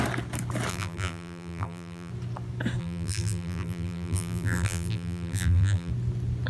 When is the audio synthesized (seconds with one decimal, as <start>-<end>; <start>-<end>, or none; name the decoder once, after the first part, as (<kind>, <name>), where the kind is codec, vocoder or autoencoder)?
0.7-2.1 (vocoder, BigVGAN v2); 2.8-5.9